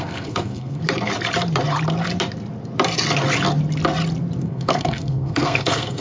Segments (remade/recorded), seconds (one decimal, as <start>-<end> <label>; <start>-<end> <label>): 0.0-0.8 remade; 0.8-4.4 recorded; 4.4-6.0 remade